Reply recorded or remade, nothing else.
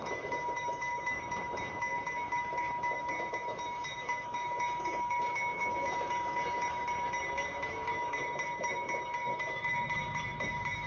remade